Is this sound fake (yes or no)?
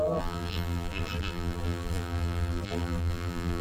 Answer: yes